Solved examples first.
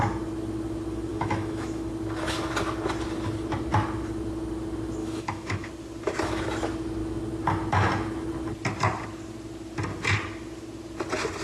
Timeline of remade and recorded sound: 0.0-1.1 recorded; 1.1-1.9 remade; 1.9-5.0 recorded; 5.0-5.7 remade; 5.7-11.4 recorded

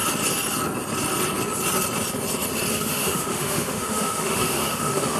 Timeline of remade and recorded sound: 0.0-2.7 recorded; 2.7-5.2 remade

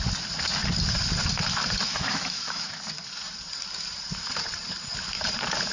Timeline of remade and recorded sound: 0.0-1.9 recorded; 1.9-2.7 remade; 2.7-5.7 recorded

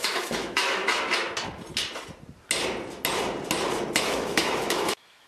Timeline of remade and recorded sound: 0.0-0.8 remade; 0.8-4.0 recorded; 4.0-5.3 remade

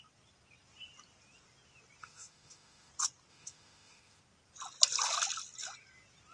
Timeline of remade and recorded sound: 0.0-2.0 recorded; 2.0-2.9 remade; 2.9-3.3 recorded; 3.3-4.2 remade; 4.2-6.3 recorded